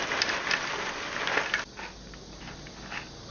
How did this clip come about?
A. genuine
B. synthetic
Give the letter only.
A